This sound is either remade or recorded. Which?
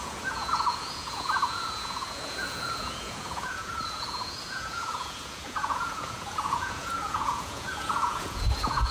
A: remade